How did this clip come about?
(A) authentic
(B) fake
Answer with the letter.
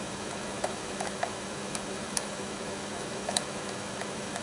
B